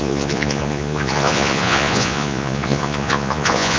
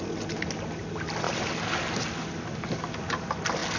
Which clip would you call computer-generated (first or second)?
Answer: first